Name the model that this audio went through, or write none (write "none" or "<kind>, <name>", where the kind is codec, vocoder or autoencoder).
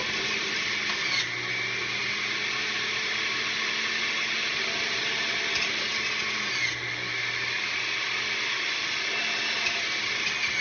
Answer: none